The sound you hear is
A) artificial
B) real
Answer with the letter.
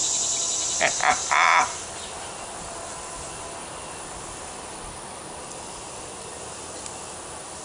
B